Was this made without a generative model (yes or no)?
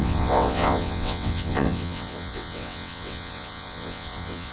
no